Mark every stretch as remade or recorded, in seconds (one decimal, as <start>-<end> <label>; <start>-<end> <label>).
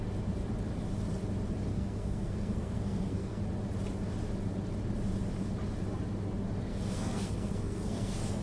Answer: 0.0-1.7 recorded; 1.7-3.4 remade; 3.4-6.7 recorded; 6.7-8.4 remade